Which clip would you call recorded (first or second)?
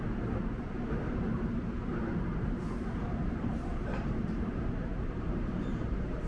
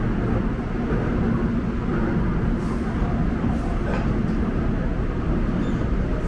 second